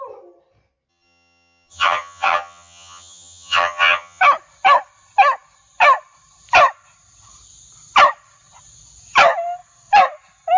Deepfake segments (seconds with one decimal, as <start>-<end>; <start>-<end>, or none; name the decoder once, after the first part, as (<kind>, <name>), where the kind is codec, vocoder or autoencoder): 0.9-4.2 (vocoder, HiFi-GAN)